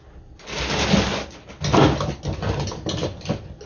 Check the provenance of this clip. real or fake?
real